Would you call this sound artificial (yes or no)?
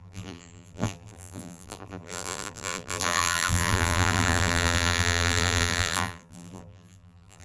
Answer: yes